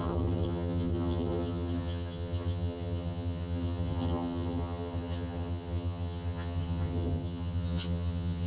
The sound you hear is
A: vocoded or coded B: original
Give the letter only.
A